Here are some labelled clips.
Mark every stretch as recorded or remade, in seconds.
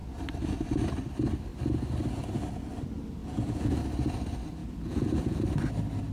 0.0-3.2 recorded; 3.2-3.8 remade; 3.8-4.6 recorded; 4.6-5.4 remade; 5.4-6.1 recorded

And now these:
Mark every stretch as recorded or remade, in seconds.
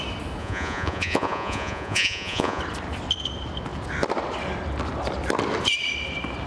0.0-0.4 recorded; 0.4-2.6 remade; 2.6-6.5 recorded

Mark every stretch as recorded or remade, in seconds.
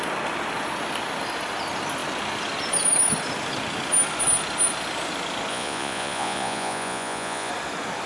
0.0-5.5 recorded; 5.5-7.5 remade; 7.5-8.1 recorded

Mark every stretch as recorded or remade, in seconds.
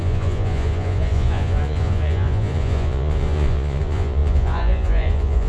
0.0-5.5 remade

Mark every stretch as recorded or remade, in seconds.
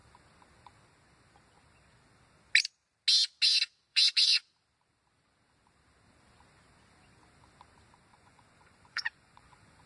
0.0-3.9 recorded; 3.9-4.5 remade; 4.5-8.1 recorded; 8.1-9.9 remade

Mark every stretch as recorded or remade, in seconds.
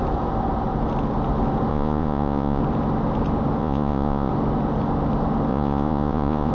0.0-1.7 recorded; 1.7-2.6 remade; 2.6-3.6 recorded; 3.6-4.3 remade; 4.3-5.5 recorded; 5.5-6.5 remade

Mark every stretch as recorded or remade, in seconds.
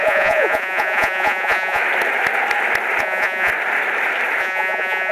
0.0-1.8 remade; 1.8-3.0 recorded; 3.0-3.5 remade; 3.5-4.4 recorded; 4.4-5.1 remade